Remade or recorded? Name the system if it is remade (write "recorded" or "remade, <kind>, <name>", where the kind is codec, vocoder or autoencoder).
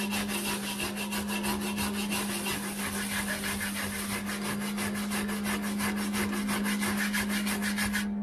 recorded